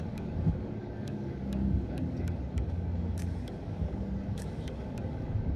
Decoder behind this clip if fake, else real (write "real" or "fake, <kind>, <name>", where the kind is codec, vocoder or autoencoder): fake, codec, DAC